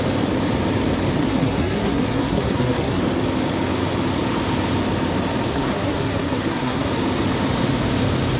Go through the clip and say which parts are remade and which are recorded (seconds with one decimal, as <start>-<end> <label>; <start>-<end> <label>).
0.0-1.2 recorded; 1.2-3.0 remade; 3.0-5.5 recorded; 5.5-6.9 remade; 6.9-8.4 recorded